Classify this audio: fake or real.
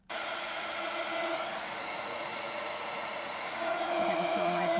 fake